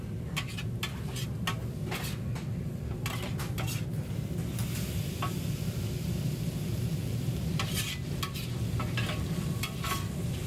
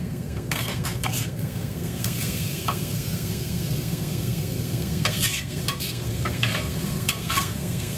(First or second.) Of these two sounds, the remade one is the second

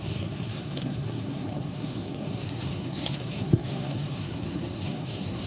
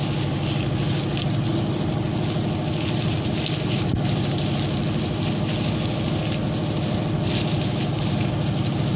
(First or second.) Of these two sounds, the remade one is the first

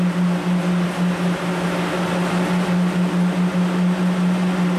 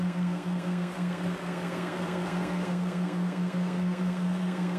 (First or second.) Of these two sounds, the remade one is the second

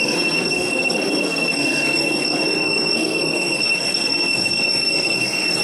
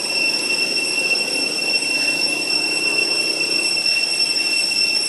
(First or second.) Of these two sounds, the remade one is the first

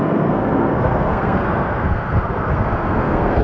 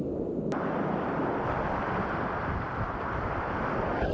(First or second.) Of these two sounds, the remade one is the first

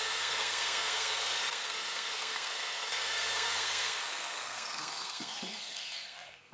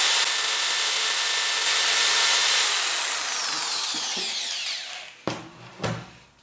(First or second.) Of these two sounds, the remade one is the first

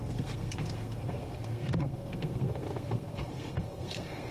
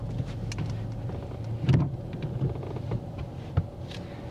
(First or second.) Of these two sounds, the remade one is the first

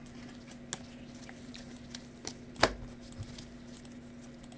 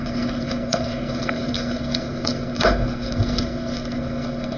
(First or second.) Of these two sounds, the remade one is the second